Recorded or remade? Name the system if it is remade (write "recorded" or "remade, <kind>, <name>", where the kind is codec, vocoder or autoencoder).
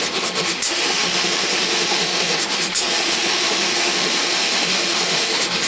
remade, autoencoder, DAC-VAE